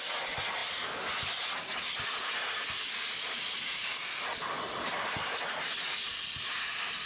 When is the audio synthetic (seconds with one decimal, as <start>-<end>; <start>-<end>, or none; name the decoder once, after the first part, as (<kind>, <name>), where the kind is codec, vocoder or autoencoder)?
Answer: none